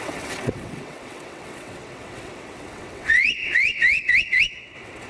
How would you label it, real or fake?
fake